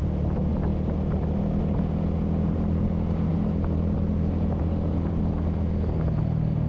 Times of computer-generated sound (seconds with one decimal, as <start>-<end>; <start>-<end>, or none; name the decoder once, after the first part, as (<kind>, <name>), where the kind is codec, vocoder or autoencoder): 3.3-4.6 (vocoder, BigVGAN v2)